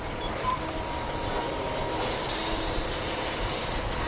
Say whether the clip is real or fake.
real